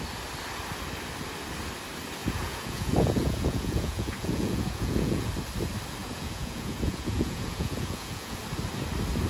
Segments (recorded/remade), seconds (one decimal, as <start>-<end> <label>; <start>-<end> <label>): 0.0-2.2 recorded; 2.2-5.3 remade; 5.3-6.0 recorded; 6.0-8.4 remade; 8.4-9.3 recorded